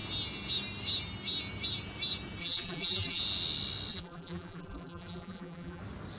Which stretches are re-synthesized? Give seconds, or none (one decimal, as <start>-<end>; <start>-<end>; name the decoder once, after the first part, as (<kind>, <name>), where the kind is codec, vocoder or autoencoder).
2.4-3.2 (vocoder, BigVGAN v2); 3.9-5.8